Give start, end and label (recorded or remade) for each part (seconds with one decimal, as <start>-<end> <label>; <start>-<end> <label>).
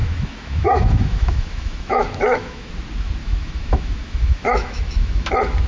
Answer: 0.0-2.7 remade; 2.7-3.2 recorded; 3.2-5.3 remade; 5.3-5.7 recorded